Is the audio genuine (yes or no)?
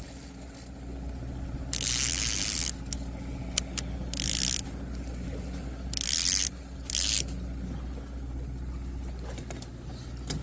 yes